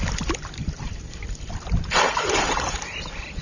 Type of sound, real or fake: fake